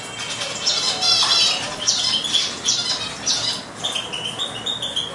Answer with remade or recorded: recorded